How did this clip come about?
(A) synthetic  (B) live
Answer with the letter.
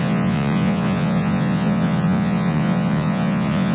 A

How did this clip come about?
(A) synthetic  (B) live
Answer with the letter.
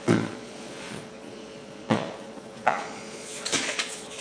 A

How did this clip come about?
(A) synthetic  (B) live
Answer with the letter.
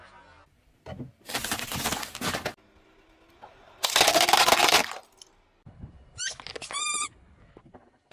B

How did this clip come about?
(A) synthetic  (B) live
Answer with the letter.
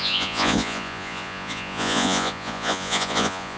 A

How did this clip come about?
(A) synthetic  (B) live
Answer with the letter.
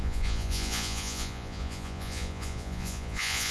A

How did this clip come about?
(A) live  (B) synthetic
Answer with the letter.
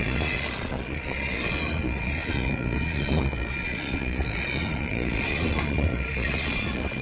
B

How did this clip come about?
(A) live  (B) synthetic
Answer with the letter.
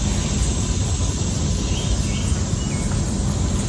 A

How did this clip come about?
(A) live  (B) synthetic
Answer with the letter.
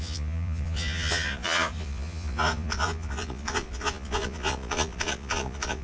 B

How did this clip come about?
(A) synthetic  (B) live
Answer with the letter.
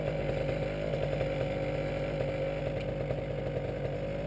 B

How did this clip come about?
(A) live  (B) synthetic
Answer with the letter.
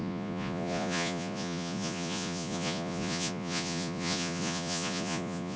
B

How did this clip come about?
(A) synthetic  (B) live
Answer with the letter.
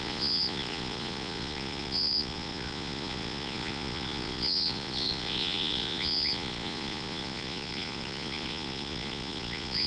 A